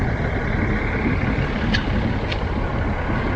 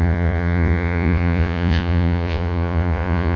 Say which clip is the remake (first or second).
second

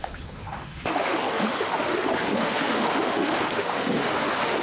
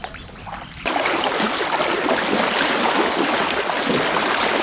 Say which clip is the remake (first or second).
first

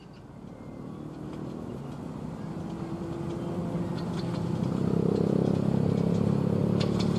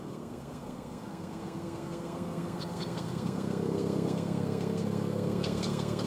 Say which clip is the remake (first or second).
second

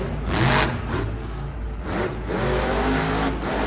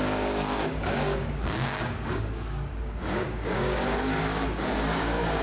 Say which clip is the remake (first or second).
second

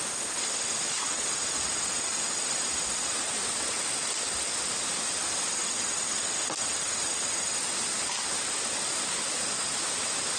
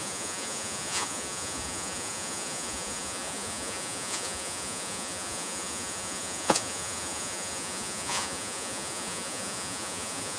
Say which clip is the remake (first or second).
second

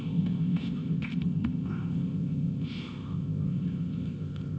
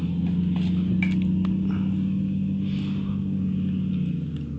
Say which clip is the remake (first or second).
first